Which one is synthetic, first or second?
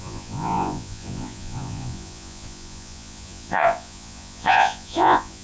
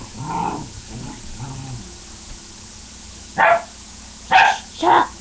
first